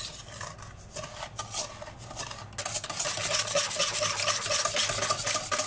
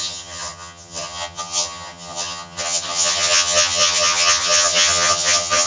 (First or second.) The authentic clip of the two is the first